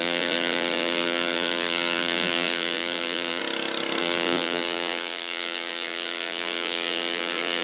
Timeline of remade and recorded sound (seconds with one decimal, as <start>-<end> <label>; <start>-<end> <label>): 0.0-3.4 remade; 3.4-4.0 recorded; 4.0-7.6 remade